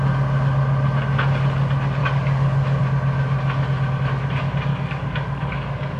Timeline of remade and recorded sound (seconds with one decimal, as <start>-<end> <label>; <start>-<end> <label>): 0.0-2.0 recorded; 2.0-2.8 remade; 2.8-4.7 recorded; 4.7-6.0 remade